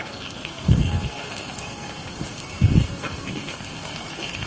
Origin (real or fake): fake